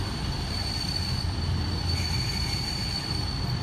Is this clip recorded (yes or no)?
yes